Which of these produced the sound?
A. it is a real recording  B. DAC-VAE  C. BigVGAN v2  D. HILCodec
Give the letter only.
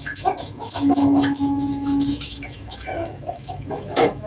B